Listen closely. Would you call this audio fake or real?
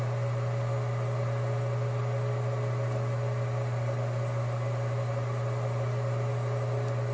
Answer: real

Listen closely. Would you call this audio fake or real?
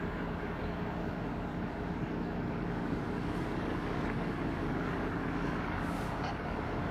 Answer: fake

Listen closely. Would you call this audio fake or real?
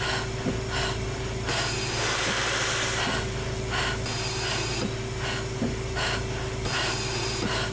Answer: real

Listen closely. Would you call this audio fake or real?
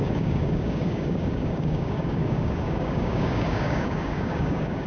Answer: fake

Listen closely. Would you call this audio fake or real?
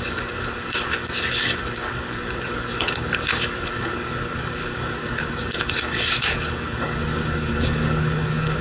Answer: fake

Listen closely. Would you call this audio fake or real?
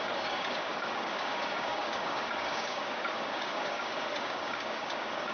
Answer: fake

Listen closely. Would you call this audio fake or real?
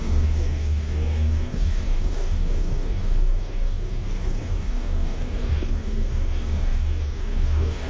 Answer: fake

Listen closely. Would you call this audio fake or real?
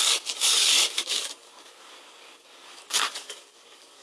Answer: fake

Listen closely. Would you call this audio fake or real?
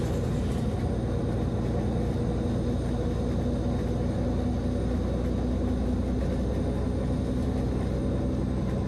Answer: real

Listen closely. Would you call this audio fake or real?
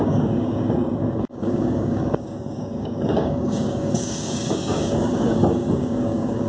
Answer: fake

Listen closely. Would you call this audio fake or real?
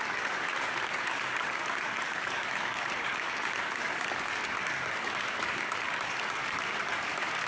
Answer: fake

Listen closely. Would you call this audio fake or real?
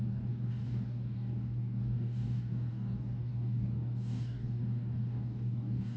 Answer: fake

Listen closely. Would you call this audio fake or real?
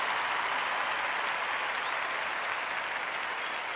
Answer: real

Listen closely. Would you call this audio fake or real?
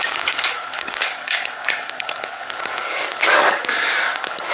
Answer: fake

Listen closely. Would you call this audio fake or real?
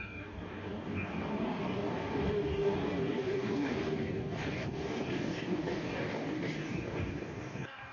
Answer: fake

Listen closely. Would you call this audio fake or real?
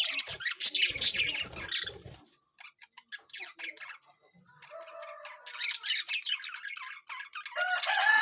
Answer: real